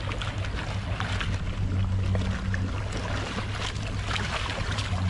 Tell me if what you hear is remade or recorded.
recorded